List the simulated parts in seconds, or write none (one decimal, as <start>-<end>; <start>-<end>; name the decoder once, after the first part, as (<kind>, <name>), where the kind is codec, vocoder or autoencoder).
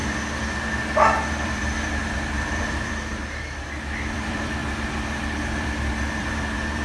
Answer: 0.5-4.6 (vocoder, BigVGAN v2); 5.6-6.8